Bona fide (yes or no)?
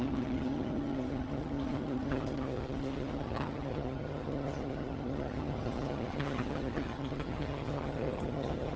no